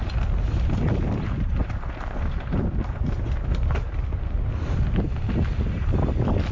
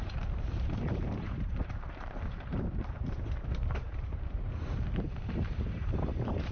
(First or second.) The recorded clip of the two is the first